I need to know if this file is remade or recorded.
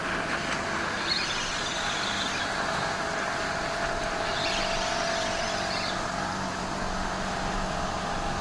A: recorded